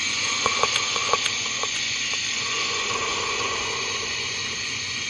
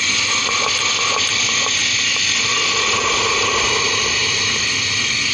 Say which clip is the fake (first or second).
first